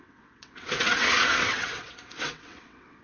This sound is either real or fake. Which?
fake